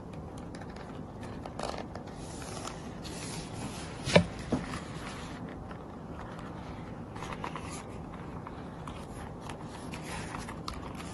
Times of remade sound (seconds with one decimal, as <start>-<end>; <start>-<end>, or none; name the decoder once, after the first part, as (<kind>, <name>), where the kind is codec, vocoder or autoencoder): none